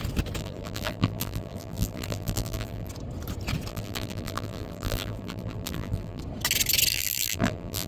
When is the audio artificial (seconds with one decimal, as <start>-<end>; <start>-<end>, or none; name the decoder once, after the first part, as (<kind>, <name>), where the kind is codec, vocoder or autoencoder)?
0.4-2.9 (vocoder, BigVGAN v2); 3.7-6.2; 6.9-7.9